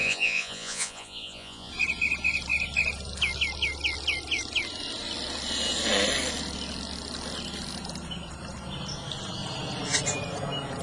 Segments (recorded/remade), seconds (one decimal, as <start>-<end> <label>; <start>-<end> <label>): 0.0-1.7 remade; 1.7-10.8 recorded